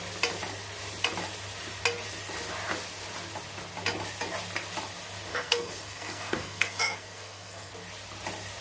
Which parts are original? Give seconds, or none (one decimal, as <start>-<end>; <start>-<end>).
0.0-5.3; 7.7-8.6